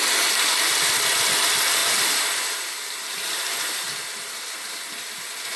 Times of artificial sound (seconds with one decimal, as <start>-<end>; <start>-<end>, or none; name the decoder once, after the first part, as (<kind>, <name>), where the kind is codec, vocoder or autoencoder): 1.8-5.6 (vocoder, BigVGAN v2)